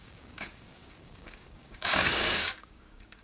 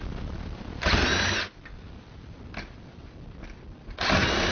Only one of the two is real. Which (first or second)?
second